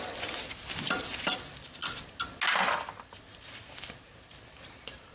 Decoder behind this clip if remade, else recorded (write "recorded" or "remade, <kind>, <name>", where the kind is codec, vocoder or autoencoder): recorded